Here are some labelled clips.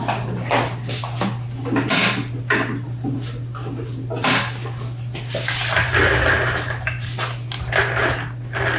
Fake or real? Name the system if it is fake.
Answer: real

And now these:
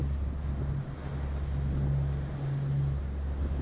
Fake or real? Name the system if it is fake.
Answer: real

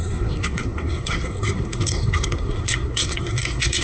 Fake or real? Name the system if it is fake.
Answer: fake, codec, SNAC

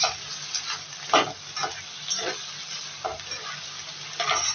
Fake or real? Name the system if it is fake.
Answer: real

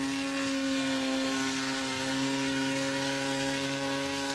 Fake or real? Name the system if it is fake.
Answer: fake, codec, SNAC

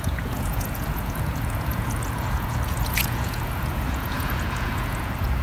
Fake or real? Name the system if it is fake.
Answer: fake, vocoder, Vocos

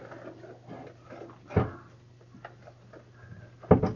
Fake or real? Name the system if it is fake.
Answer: real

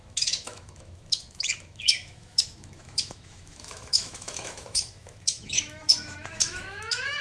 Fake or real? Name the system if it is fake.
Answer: fake, autoencoder, DAC-VAE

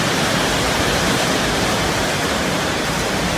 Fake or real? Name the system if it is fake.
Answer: fake, vocoder, BigVGAN v2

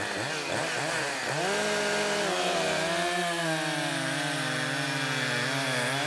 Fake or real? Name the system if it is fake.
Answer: real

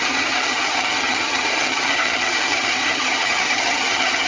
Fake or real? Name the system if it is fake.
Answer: fake, vocoder, HiFi-GAN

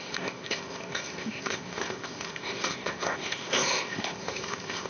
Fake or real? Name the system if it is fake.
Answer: fake, codec, ZipCodec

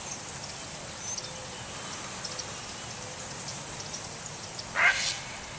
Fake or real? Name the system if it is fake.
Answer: real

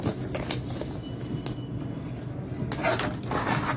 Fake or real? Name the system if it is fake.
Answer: real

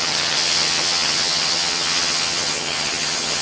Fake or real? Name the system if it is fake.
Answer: fake, vocoder, HiFi-GAN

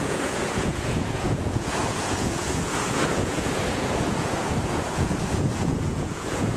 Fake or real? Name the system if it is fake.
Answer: fake, vocoder, Vocos